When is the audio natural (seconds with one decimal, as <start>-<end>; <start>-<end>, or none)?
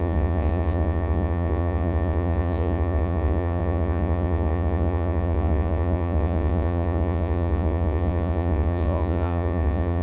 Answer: none